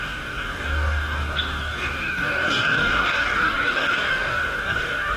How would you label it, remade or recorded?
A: remade